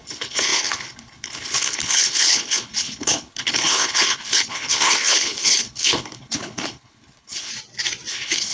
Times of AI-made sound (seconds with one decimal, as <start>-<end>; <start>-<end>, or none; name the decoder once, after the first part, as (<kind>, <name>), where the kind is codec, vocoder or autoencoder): 0.0-7.5 (codec, HILCodec); 8.1-8.5